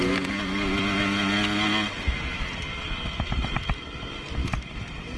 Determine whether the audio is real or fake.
real